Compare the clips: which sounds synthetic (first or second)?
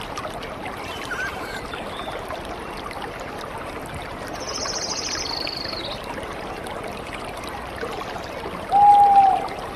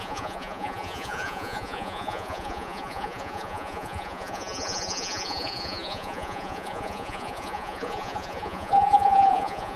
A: second